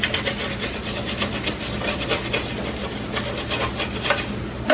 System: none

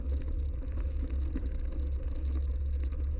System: none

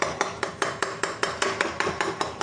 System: vocoder, BigVGAN v2